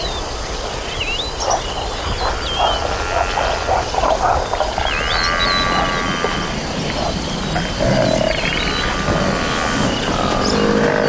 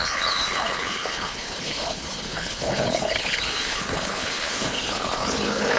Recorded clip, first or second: first